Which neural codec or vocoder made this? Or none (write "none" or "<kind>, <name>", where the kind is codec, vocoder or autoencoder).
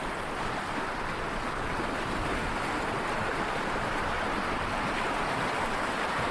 none